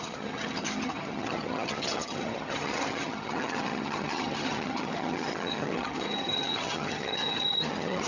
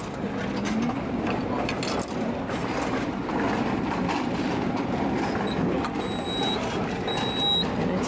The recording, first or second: second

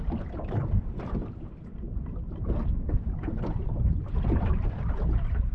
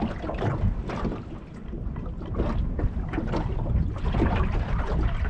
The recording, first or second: second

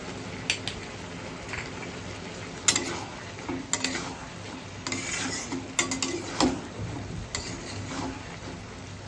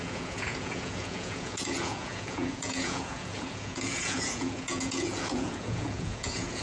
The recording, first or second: first